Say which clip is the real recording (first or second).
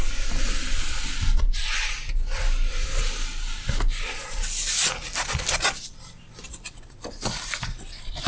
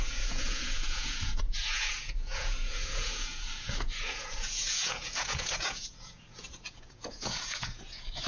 first